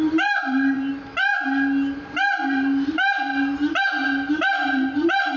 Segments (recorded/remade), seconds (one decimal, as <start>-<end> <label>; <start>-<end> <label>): 0.0-0.9 remade; 0.9-2.2 recorded; 2.2-5.4 remade